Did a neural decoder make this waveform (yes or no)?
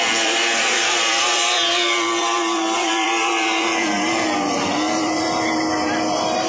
yes